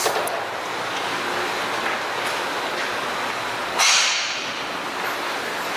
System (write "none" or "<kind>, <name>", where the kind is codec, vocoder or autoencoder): none